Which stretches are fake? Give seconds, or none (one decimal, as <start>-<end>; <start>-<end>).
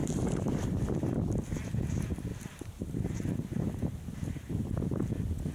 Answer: 0.0-0.8; 2.3-4.5